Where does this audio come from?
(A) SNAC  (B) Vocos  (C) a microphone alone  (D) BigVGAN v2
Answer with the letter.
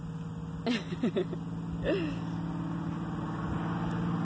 C